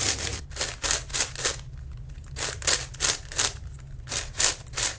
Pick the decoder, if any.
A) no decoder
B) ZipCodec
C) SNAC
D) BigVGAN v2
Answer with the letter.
A